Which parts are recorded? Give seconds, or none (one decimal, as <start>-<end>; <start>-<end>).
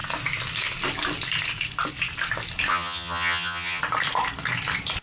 0.0-2.7; 3.8-5.0